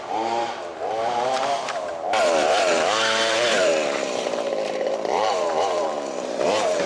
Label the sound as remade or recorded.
remade